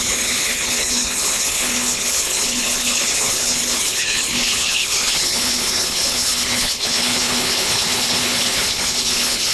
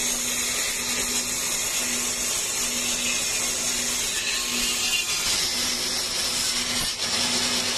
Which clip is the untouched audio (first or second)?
second